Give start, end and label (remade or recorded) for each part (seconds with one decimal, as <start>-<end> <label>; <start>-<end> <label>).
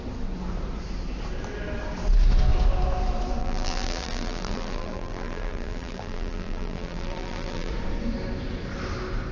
0.0-3.4 recorded; 3.4-7.7 remade; 7.7-9.3 recorded